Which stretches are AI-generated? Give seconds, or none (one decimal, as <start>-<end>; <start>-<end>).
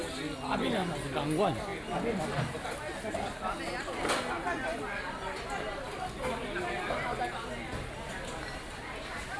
none